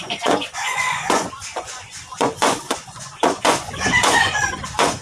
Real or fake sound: fake